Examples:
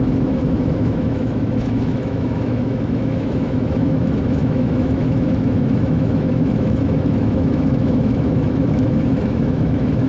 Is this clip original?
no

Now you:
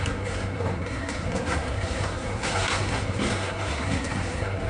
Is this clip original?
no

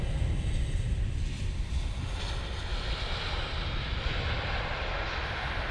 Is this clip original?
yes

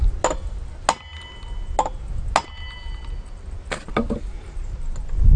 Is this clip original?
yes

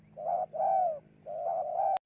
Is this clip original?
yes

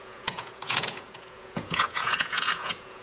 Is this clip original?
no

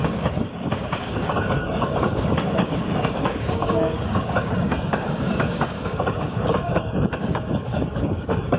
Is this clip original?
no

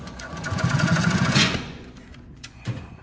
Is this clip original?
no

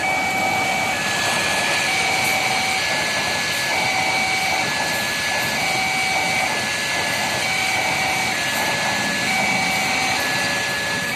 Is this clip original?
yes